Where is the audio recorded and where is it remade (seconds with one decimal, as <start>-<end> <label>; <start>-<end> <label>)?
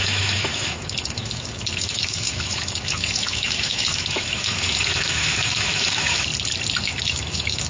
0.0-6.3 remade; 6.3-6.8 recorded; 6.8-7.7 remade